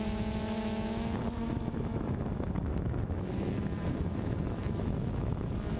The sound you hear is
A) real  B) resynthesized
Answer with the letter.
B